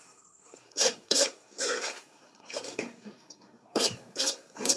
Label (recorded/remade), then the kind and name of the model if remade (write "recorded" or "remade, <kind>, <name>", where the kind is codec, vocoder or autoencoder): remade, codec, SNAC